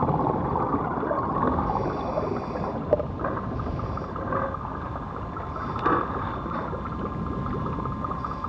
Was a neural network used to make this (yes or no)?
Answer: no